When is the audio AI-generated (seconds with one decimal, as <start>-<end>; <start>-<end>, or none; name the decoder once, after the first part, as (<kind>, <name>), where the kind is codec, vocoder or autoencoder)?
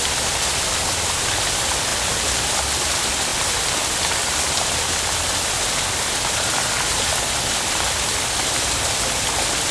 none